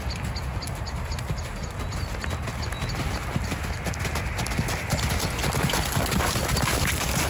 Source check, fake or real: real